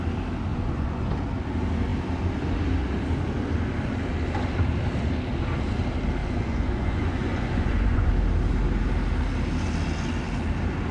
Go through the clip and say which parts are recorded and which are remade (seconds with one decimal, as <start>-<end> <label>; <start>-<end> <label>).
0.0-0.5 recorded; 0.5-1.1 remade; 1.1-6.2 recorded; 6.2-8.1 remade; 8.1-10.9 recorded